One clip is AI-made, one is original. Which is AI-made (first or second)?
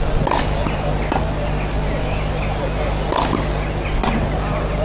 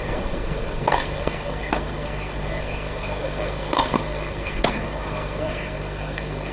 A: second